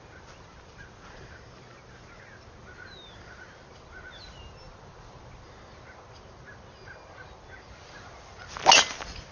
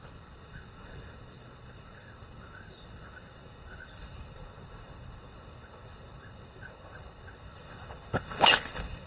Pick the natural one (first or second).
first